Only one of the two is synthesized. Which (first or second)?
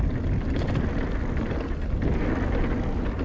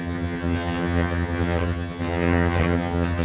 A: second